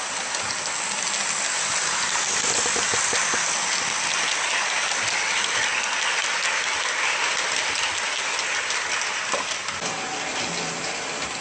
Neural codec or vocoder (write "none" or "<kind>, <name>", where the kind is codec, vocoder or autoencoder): none